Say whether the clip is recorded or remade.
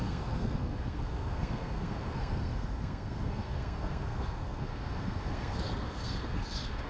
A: remade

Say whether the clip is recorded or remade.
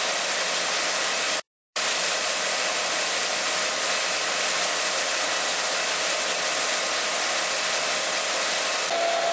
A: recorded